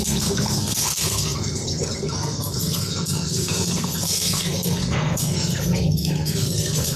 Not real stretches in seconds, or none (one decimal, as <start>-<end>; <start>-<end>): 0.0-7.0